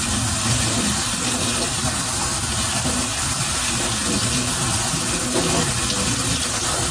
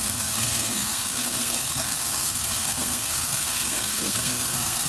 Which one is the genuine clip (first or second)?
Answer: first